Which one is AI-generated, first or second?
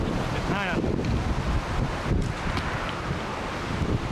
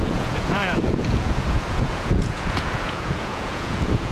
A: second